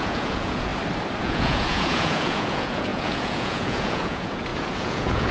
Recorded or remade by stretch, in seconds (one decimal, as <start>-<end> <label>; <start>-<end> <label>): 0.0-0.7 remade; 0.7-1.2 recorded; 1.2-5.3 remade